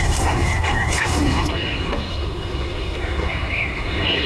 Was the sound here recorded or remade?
remade